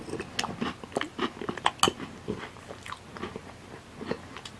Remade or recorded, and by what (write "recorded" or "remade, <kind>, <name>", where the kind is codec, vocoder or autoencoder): recorded